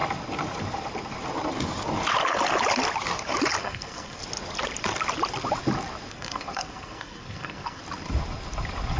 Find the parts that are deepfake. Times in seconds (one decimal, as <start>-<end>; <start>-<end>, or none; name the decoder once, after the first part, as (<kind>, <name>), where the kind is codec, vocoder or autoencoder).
3.6-4.2 (codec, SNAC); 6.1-7.8